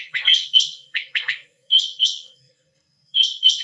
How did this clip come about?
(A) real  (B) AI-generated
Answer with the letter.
B